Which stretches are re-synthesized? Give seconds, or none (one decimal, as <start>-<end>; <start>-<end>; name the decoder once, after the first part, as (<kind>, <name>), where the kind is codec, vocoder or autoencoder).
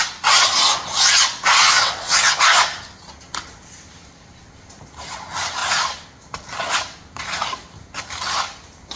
1.6-2.4 (vocoder, WaveNeXt)